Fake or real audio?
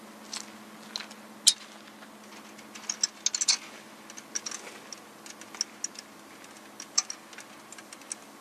real